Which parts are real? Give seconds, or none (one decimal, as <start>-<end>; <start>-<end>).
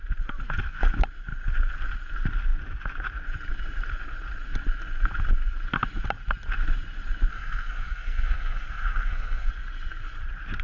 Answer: 0.0-7.3; 9.5-10.6